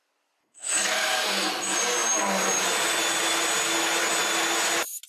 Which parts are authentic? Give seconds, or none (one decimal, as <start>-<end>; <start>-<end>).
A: 0.0-0.4; 1.5-5.1